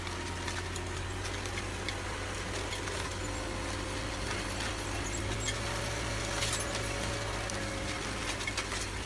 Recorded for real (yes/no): yes